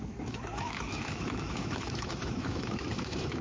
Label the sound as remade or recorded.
remade